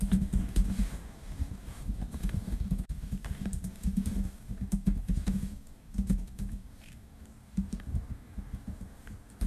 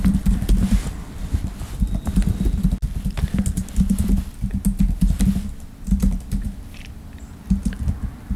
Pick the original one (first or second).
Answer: second